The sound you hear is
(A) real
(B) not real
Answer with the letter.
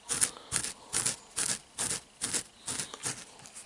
A